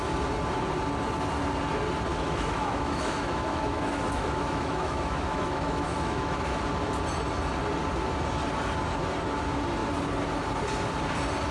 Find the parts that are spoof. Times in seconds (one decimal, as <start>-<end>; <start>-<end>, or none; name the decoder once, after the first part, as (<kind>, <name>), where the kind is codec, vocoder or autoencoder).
2.1-6.6 (autoencoder, DAC-VAE)